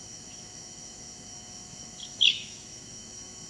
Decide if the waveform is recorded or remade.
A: remade